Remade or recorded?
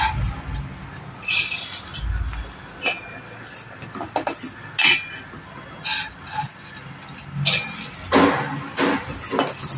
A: recorded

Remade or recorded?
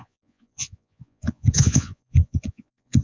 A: remade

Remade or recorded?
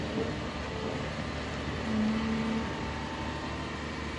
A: recorded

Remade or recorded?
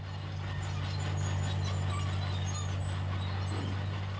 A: recorded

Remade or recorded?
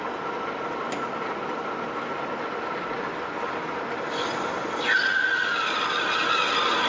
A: recorded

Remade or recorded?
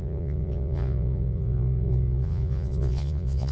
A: remade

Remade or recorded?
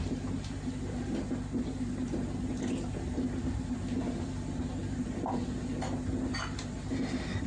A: recorded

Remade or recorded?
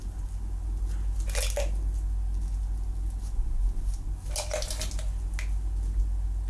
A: recorded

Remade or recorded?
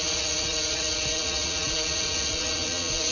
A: remade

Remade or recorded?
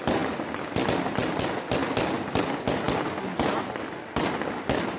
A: recorded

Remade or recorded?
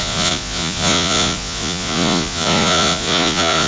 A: remade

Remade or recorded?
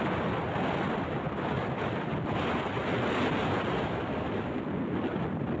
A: recorded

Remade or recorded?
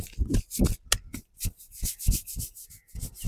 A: recorded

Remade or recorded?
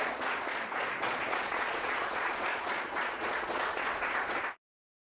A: remade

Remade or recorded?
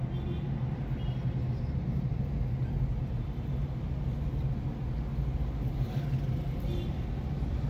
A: recorded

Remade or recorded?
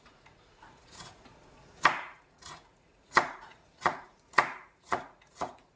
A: remade